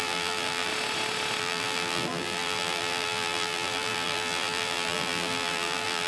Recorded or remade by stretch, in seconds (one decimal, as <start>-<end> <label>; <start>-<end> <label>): 0.0-0.7 remade; 0.7-1.4 recorded; 1.4-6.1 remade